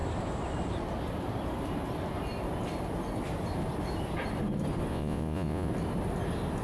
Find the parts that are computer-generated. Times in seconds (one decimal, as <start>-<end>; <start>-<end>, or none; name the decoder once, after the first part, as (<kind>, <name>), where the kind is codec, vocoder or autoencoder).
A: 4.9-5.7 (vocoder, Vocos)